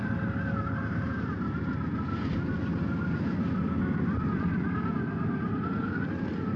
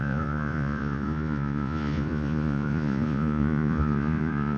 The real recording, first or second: first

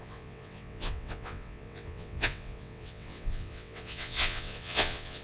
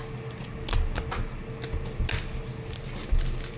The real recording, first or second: second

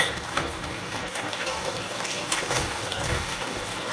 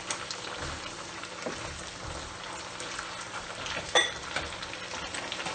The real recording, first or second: second